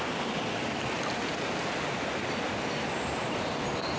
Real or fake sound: real